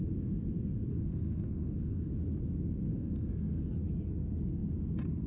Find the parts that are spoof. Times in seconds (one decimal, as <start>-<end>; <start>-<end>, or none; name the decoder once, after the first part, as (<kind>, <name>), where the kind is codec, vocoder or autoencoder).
0.9-2.1 (codec, SNAC); 2.9-3.7